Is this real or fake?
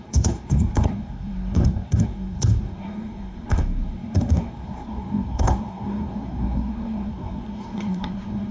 fake